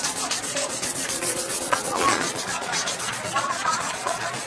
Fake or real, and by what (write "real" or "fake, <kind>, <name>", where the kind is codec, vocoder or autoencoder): fake, vocoder, Vocos